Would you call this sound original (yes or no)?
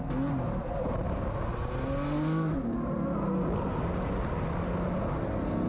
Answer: yes